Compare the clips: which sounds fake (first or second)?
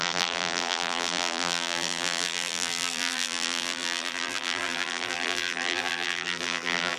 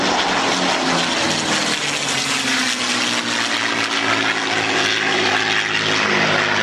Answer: first